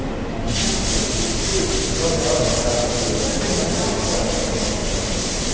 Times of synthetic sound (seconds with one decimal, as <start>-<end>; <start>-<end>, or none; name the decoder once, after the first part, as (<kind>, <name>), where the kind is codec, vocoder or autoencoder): 4.8-5.5 (vocoder, BigVGAN v2)

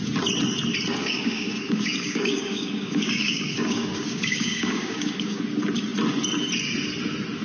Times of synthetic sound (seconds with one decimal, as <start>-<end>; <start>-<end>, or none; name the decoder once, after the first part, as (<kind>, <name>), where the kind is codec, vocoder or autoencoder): 1.0-5.4 (codec, DAC)

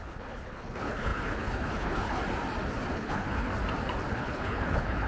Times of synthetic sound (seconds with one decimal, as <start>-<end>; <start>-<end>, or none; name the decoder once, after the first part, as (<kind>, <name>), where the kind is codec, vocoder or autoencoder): 0.0-2.2 (codec, HILCodec); 2.9-3.5; 4.1-5.1

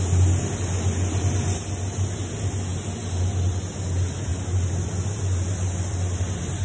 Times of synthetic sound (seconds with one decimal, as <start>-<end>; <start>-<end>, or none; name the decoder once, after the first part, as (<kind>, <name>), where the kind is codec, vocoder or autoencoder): none

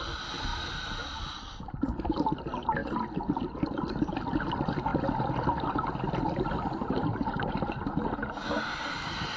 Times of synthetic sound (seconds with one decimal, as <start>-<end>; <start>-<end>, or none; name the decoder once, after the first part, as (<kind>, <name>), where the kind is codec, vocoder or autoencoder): none

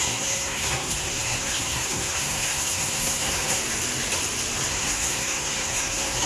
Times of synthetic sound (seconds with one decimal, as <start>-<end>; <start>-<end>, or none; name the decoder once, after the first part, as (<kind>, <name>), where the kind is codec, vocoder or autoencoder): 0.0-3.6 (codec, SNAC); 4.7-6.3